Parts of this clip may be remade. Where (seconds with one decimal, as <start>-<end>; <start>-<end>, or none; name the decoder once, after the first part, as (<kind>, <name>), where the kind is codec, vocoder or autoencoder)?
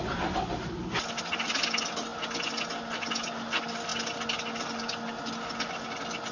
none